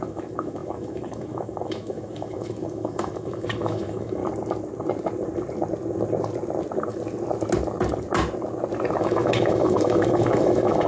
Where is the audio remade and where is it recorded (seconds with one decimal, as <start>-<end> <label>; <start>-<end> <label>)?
0.0-4.2 remade; 4.2-9.0 recorded; 9.0-10.9 remade